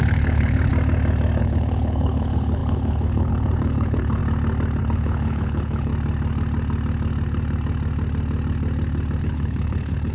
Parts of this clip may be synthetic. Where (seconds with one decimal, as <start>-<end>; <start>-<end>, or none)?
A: 0.0-0.7; 1.4-4.2; 4.8-5.9; 9.2-10.1